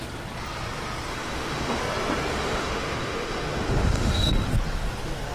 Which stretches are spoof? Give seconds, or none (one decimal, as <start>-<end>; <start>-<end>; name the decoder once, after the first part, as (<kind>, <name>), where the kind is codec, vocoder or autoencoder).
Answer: 1.1-1.8 (autoencoder, DAC-VAE); 2.3-4.3